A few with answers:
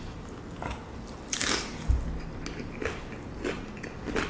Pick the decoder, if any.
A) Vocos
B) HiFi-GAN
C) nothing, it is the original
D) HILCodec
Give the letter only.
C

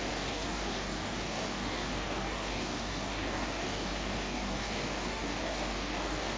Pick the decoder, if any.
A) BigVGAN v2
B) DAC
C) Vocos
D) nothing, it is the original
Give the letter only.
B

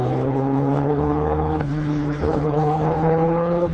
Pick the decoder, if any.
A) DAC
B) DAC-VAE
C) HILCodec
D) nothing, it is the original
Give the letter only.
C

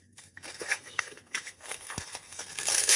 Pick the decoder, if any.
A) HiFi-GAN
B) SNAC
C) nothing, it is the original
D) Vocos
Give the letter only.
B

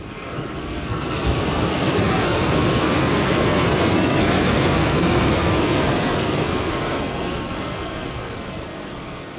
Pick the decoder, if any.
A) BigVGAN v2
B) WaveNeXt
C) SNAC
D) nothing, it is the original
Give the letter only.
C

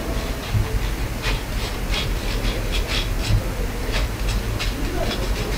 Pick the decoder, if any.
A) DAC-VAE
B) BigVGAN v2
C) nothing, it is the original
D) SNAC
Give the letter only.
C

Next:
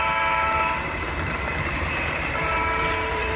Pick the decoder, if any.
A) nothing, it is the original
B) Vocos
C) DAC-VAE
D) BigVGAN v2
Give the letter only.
D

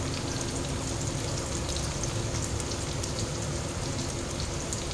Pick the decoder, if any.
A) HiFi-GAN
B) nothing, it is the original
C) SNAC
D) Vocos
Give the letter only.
B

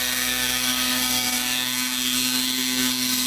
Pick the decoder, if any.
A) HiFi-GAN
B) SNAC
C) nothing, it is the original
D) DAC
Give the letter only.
B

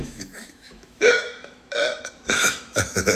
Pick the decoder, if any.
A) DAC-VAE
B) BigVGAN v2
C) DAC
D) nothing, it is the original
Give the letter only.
A